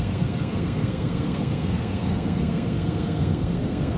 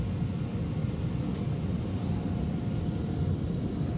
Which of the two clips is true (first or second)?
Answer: second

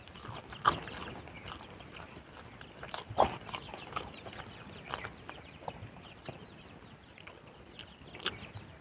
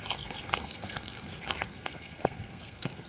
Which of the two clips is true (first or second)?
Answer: first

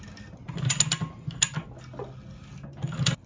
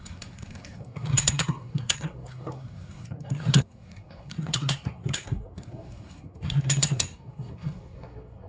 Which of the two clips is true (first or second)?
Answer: first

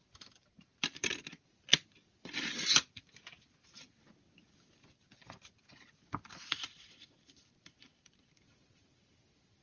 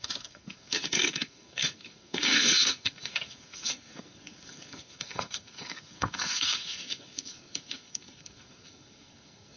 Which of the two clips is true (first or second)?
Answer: first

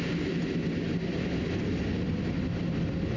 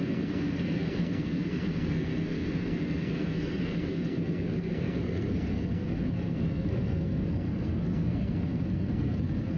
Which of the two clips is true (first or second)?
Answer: first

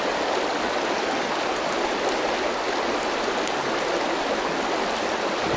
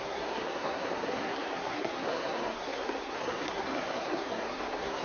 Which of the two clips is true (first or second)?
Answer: first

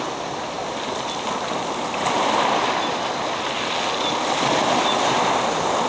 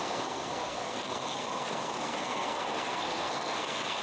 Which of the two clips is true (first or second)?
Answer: first